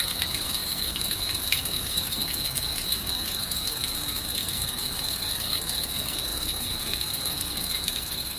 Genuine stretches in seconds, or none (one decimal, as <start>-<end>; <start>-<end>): none